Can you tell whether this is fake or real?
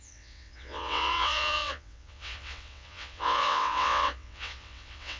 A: fake